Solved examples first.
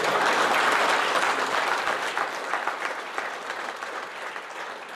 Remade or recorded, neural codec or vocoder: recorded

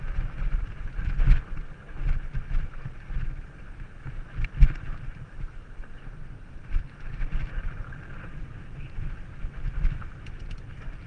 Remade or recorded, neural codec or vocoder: recorded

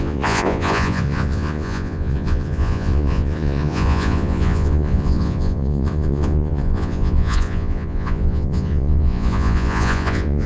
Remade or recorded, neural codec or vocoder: remade, vocoder, Vocos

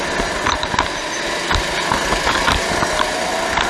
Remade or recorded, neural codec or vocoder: recorded